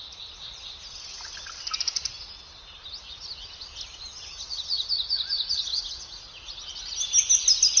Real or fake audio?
real